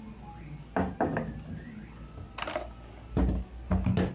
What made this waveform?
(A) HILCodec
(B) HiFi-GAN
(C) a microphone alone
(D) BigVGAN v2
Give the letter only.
C